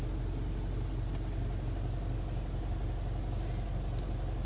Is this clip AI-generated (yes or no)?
no